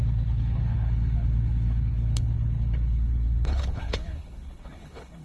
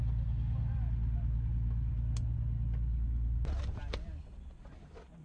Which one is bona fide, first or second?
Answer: second